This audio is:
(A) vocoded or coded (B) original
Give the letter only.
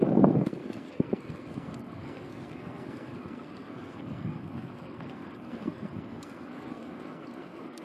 A